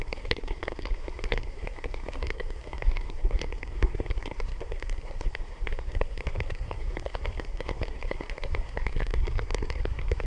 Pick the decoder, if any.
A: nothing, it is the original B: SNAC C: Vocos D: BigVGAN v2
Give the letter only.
B